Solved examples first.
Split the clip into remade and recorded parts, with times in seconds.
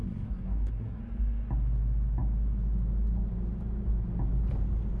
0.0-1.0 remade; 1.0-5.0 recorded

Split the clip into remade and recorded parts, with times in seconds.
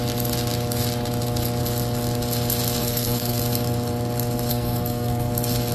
0.0-2.8 recorded; 2.8-3.4 remade; 3.4-4.5 recorded; 4.5-5.3 remade; 5.3-5.7 recorded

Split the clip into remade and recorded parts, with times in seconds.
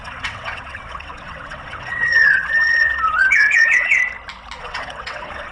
0.0-4.0 remade; 4.0-4.6 recorded; 4.6-5.5 remade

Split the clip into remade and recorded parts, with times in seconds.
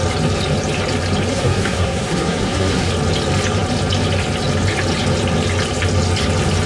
0.0-1.3 recorded; 1.3-2.9 remade; 2.9-6.7 recorded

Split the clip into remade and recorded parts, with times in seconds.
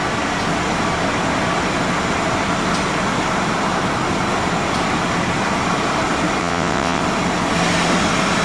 0.0-6.4 recorded; 6.4-7.0 remade; 7.0-8.4 recorded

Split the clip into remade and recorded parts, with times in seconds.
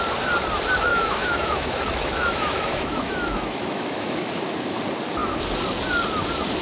0.0-0.9 recorded; 0.9-4.8 remade; 4.8-6.6 recorded